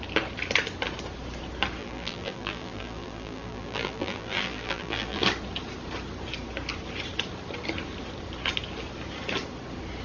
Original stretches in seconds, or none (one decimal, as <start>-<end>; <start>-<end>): 0.0-1.8; 5.2-10.0